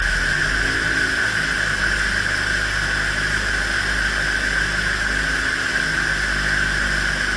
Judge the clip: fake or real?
real